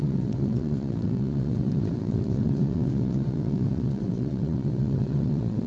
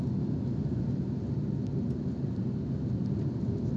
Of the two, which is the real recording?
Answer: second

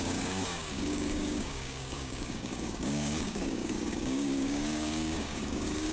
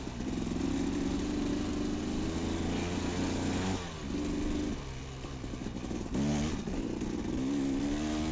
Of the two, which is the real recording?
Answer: second